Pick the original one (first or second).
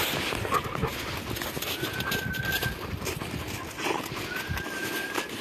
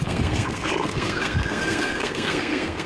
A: first